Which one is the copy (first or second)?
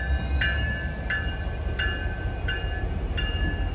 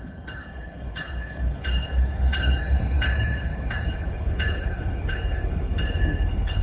second